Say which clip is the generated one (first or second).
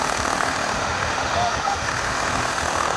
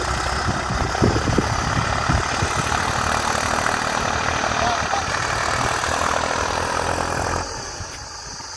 first